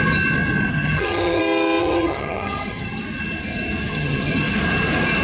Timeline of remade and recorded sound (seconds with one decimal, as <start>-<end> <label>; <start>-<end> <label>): 0.0-0.7 recorded; 0.7-1.4 remade; 1.4-1.8 recorded; 1.8-3.0 remade; 3.0-3.9 recorded; 3.9-4.6 remade; 4.6-5.2 recorded